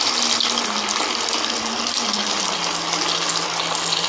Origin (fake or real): real